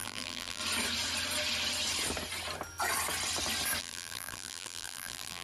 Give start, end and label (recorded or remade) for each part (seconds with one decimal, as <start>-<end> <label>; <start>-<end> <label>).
0.0-0.6 remade; 0.6-3.8 recorded; 3.8-5.4 remade